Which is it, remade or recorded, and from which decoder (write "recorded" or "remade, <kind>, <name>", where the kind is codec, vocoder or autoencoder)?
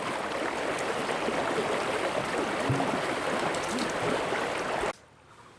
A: recorded